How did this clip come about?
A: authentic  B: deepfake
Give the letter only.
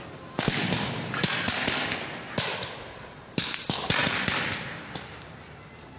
A